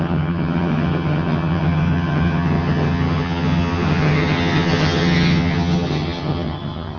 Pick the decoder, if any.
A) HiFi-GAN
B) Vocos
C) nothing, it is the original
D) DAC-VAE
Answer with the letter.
A